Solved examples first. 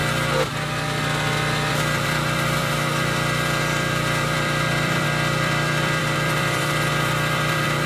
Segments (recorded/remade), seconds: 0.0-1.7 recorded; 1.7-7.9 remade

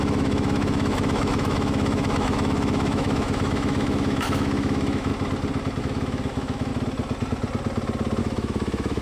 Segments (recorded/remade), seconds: 0.0-5.1 remade; 5.1-5.8 recorded; 5.8-6.7 remade; 6.7-8.2 recorded; 8.2-9.0 remade